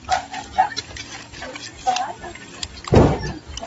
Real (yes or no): yes